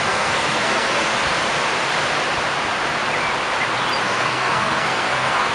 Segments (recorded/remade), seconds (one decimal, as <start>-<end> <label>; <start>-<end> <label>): 0.0-1.1 remade; 1.1-4.0 recorded; 4.0-5.5 remade